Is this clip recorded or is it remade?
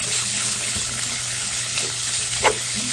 remade